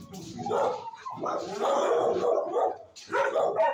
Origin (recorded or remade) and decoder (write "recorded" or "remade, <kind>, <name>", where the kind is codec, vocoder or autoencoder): remade, vocoder, BigVGAN v2